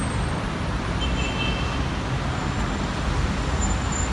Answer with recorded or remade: recorded